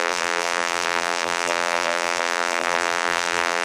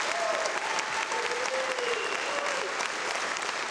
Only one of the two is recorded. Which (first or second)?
second